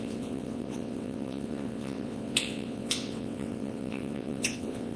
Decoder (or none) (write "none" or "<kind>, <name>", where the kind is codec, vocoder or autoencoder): vocoder, WaveNeXt